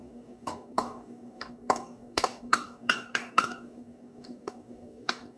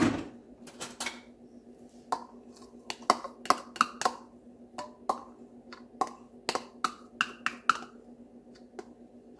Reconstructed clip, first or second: first